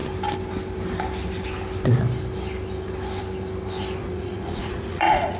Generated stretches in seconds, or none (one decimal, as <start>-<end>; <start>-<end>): 4.0-5.4